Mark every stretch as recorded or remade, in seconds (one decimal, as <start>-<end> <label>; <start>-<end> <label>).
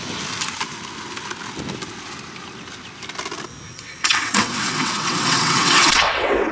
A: 0.0-3.7 recorded; 3.7-6.5 remade